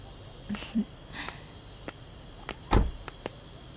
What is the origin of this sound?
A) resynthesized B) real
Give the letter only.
B